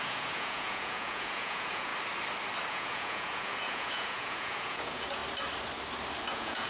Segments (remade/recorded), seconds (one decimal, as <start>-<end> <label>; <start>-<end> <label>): 0.0-1.9 remade; 1.9-2.7 recorded; 2.7-5.2 remade; 5.2-6.3 recorded; 6.3-6.7 remade